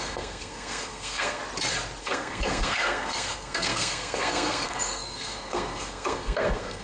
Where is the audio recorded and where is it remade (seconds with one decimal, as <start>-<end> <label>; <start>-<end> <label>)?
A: 0.0-1.4 remade; 1.4-2.0 recorded; 2.0-6.8 remade